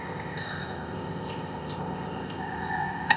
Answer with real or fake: fake